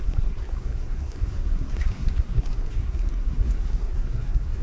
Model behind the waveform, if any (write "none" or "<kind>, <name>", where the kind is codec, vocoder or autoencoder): codec, SNAC